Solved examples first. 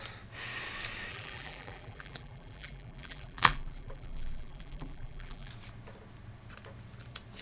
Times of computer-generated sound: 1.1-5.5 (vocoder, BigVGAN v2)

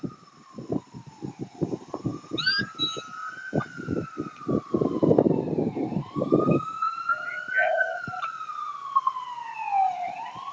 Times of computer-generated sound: none

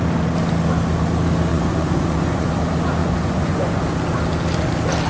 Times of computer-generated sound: 1.5-2.5 (vocoder, Vocos); 3.0-3.8